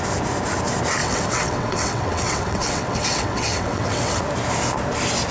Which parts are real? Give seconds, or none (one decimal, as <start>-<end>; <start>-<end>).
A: 0.0-1.0; 4.2-5.3